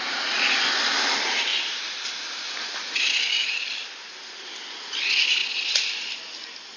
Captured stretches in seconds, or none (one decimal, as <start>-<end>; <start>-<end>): 0.0-1.5; 3.7-6.8